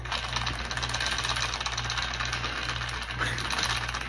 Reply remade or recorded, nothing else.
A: recorded